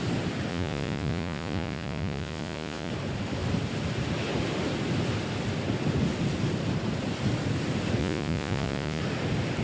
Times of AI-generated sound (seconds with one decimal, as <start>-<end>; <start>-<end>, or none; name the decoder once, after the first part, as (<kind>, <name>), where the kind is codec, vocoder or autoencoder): 0.5-2.9 (vocoder, Vocos); 8.0-9.0